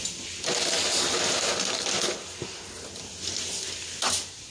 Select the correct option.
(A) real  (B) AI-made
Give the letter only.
A